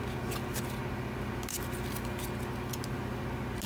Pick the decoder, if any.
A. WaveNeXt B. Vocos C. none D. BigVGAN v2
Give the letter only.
C